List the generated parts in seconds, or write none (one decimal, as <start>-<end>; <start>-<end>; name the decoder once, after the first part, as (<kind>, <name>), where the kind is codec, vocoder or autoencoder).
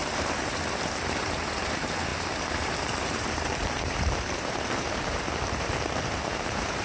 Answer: 0.0-6.8 (vocoder, BigVGAN v2)